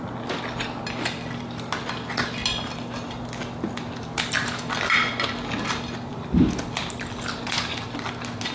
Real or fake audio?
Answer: real